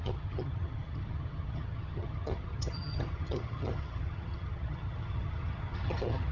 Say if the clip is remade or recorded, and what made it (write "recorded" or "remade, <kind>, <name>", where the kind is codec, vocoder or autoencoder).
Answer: remade, vocoder, HiFi-GAN